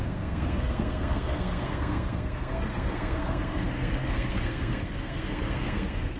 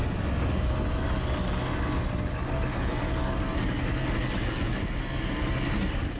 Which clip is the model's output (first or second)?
first